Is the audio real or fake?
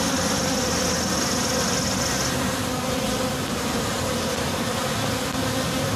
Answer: real